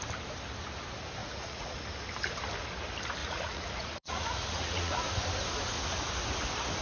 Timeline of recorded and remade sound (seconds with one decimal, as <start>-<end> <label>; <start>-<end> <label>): 0.0-1.2 recorded; 1.2-1.7 remade; 1.7-3.2 recorded; 3.2-5.0 remade; 5.0-6.8 recorded